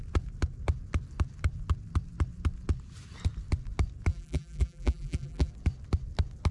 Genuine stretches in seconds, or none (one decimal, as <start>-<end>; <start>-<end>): 0.0-4.1; 5.5-6.5